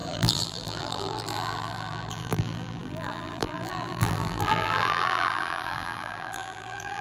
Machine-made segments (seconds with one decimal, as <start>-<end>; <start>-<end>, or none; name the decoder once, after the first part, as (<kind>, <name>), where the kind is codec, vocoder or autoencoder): 0.0-7.0 (vocoder, BigVGAN v2)